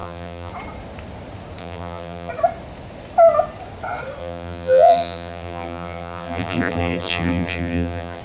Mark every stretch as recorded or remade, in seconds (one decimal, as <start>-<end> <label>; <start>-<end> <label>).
0.0-0.5 remade; 0.5-1.6 recorded; 1.6-2.3 remade; 2.3-4.2 recorded; 4.2-8.2 remade

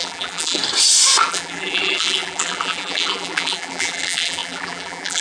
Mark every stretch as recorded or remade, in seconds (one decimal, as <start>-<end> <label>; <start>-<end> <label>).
0.0-0.6 remade; 0.6-1.2 recorded; 1.2-5.2 remade